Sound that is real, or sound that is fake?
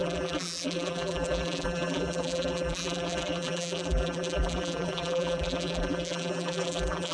fake